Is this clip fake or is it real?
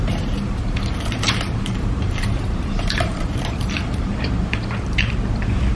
fake